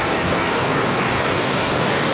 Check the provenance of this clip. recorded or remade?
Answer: remade